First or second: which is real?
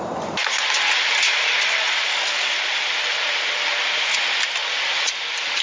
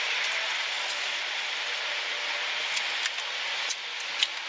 second